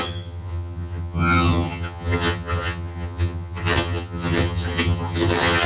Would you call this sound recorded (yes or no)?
no